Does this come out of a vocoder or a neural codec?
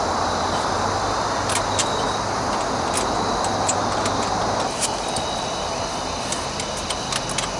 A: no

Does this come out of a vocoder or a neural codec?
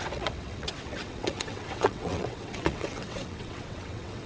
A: yes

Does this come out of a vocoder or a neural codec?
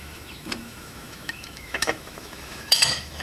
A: yes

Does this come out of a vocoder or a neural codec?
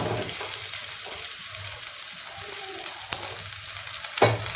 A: no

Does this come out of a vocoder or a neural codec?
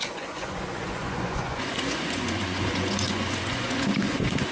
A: yes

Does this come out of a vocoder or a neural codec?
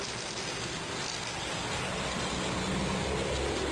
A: no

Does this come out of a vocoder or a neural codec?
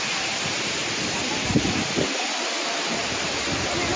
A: no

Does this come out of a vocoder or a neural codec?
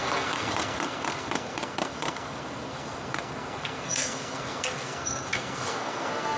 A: yes